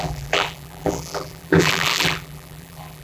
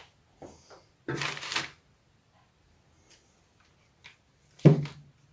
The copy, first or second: first